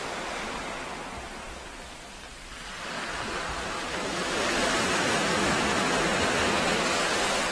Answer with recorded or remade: recorded